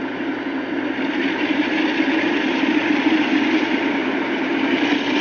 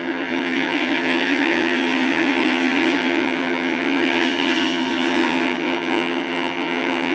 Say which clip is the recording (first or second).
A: first